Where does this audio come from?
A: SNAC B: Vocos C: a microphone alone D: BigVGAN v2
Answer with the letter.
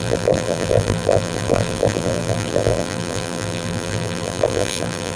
D